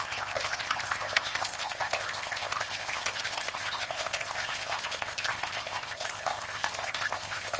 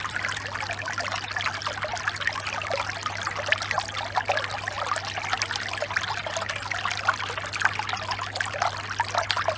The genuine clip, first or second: second